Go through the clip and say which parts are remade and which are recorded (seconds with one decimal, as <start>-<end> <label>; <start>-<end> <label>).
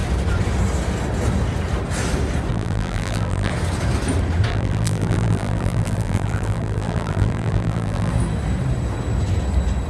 0.0-2.5 recorded; 2.5-3.5 remade; 3.5-4.5 recorded; 4.5-8.1 remade; 8.1-9.9 recorded